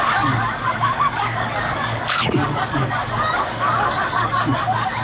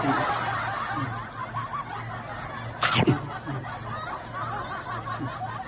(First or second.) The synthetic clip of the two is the first